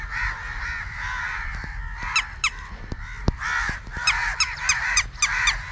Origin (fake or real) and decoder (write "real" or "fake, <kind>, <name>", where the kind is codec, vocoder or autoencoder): real